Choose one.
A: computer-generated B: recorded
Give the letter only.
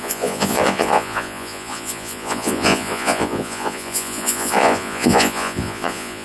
A